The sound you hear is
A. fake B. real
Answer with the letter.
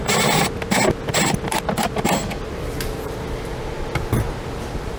B